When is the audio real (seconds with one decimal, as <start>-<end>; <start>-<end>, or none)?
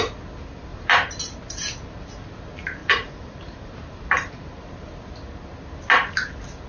0.0-0.7; 1.2-2.8; 4.7-6.7